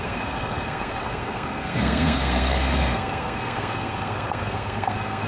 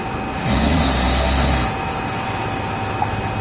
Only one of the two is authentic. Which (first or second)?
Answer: second